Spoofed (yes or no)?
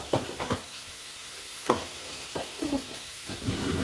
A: yes